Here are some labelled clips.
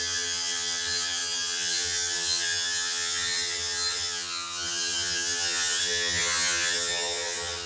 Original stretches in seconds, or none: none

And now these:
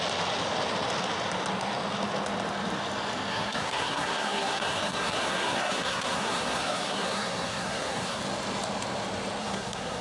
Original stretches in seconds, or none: 0.0-3.3; 8.2-9.4

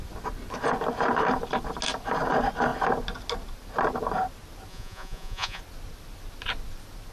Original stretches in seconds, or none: 0.0-4.7; 5.6-7.1

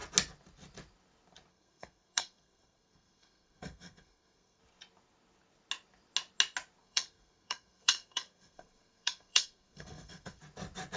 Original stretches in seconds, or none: 0.0-1.5; 4.6-6.8; 10.4-11.0

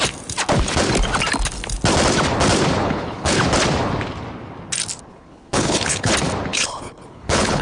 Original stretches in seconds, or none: 0.0-2.8; 3.4-5.1; 6.1-6.5

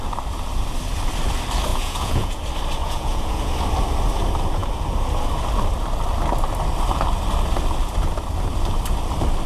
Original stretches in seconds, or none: 0.0-1.7; 2.4-2.8; 3.5-9.5

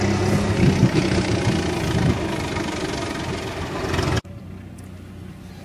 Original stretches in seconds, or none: 0.0-5.6